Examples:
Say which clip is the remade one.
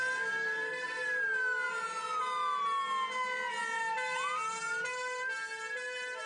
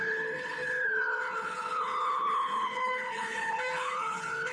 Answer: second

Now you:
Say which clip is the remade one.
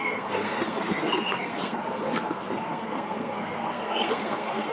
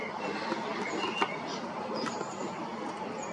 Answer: first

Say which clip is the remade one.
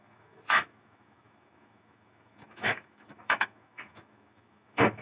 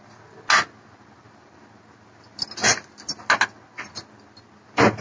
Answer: first